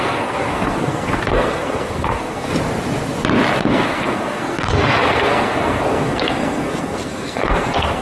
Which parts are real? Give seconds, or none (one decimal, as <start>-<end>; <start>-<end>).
2.5-3.6

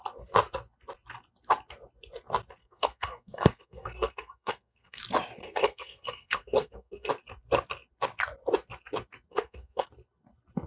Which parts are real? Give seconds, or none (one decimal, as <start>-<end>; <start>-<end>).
0.0-2.6; 5.0-5.4; 7.1-9.3; 9.9-10.7